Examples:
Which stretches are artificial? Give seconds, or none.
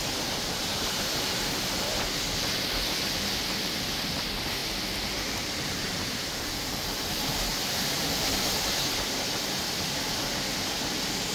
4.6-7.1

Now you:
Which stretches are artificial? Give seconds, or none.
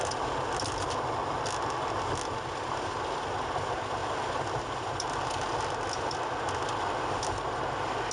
none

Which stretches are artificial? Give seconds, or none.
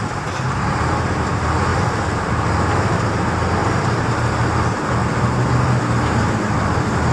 1.7-2.9; 3.6-4.1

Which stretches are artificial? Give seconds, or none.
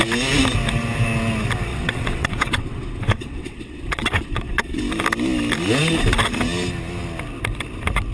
1.7-4.8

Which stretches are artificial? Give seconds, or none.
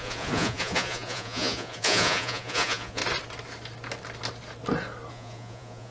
0.0-3.0; 5.1-5.9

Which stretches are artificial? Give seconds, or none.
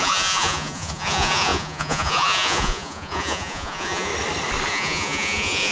0.0-4.1; 4.7-5.7